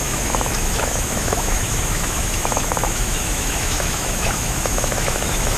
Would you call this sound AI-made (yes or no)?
yes